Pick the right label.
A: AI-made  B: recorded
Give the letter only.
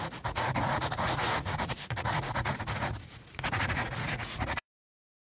A